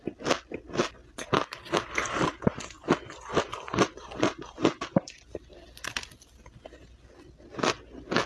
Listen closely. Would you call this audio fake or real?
real